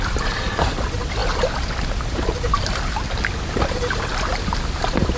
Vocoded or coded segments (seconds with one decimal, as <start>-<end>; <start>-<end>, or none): none